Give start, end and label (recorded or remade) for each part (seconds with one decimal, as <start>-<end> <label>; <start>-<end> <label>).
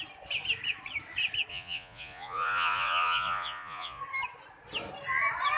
0.0-1.5 recorded; 1.5-4.0 remade; 4.0-5.6 recorded